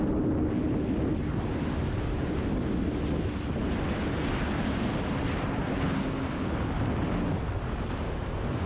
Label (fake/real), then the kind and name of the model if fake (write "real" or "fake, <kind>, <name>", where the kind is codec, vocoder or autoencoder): real